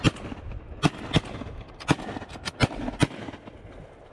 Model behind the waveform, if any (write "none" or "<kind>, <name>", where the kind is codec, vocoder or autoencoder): none